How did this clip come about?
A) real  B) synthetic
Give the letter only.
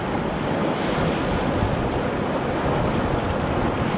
A